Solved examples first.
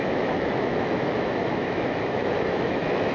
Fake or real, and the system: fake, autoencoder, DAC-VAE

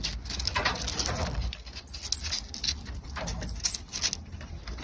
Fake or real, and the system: real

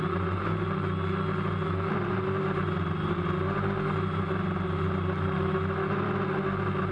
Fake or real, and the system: real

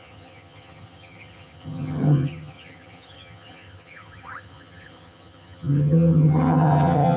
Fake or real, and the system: fake, vocoder, HiFi-GAN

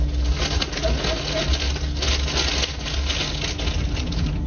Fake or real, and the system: real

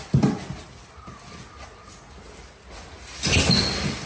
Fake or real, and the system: real